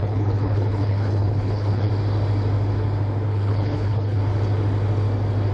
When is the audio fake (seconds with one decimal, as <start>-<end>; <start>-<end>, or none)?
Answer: 0.0-1.9; 3.3-4.2